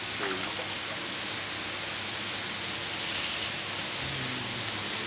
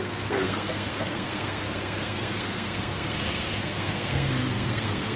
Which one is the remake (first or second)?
second